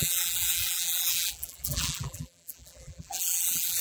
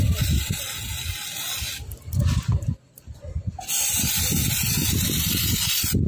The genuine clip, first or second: second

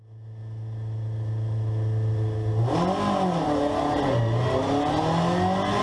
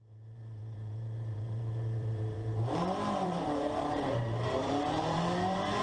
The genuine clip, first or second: first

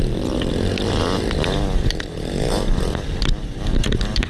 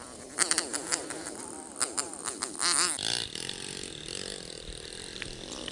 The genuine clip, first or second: first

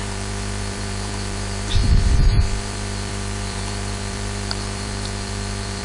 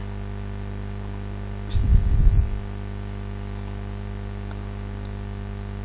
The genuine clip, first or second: second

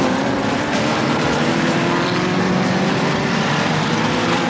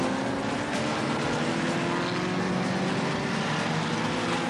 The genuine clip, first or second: second